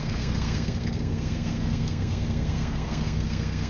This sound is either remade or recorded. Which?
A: remade